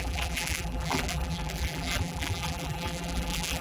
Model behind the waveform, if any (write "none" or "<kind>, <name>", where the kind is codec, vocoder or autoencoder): vocoder, BigVGAN v2